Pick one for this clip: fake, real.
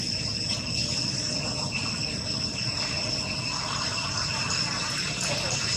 real